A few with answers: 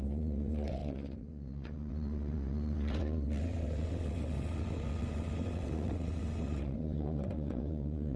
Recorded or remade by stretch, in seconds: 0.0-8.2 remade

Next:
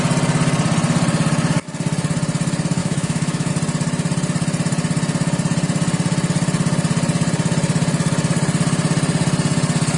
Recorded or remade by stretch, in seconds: 0.0-2.8 recorded; 2.8-3.5 remade; 3.5-10.0 recorded

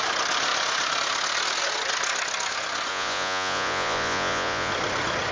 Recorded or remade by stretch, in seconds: 0.0-2.9 recorded; 2.9-4.7 remade; 4.7-5.3 recorded

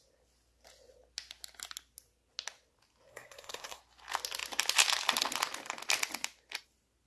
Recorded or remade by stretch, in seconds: 0.0-3.1 recorded; 3.1-3.8 remade; 3.8-7.1 recorded

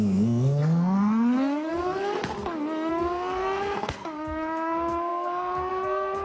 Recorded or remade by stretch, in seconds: 0.0-2.2 remade; 2.2-2.9 recorded; 2.9-6.2 remade

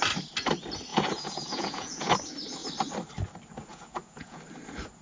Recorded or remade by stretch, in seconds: 0.0-0.9 recorded; 0.9-2.1 remade; 2.1-3.7 recorded; 3.7-4.4 remade; 4.4-5.0 recorded

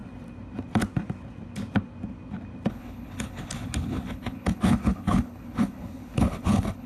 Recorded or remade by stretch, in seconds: 0.0-2.7 recorded; 2.7-6.9 remade

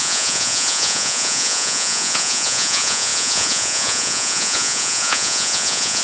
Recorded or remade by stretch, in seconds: 0.0-6.0 remade